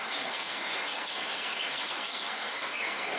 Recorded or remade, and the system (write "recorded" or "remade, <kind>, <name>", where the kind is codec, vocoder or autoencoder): remade, codec, SNAC